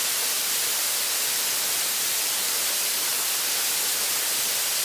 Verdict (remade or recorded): recorded